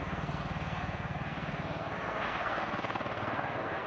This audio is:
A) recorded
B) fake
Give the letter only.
B